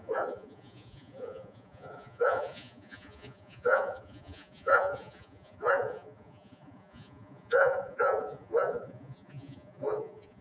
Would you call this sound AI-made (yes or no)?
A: yes